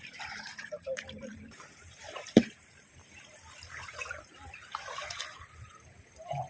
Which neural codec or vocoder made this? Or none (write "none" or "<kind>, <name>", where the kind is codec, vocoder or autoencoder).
vocoder, BigVGAN v2